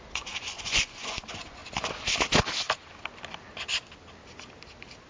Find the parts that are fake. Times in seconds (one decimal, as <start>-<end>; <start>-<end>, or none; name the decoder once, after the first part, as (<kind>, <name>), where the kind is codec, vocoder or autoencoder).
0.0-1.6 (vocoder, Vocos)